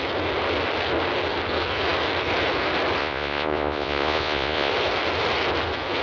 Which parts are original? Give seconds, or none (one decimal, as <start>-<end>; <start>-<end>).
0.0-3.0; 4.7-6.0

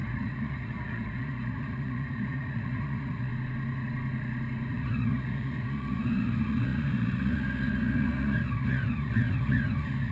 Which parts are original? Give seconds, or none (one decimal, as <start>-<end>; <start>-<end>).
3.3-4.7

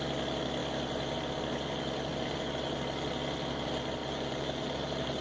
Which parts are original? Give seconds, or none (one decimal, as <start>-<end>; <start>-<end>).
0.0-4.0

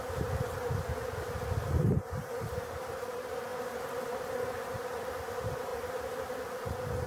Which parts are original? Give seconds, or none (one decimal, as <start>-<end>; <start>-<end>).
0.0-7.1

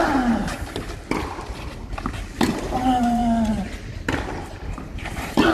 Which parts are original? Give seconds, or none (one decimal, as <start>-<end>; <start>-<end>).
0.4-2.7; 3.2-4.7

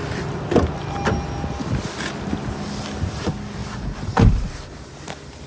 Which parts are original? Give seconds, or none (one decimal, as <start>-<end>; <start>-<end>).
0.0-3.6